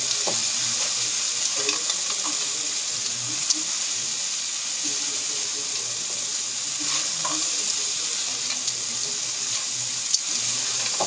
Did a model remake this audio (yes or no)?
no